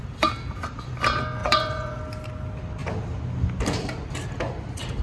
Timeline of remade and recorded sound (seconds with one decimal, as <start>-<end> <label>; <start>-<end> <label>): 0.0-1.4 recorded; 1.4-2.0 remade; 2.0-5.0 recorded